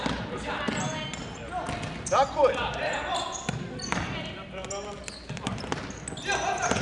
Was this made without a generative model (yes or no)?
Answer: yes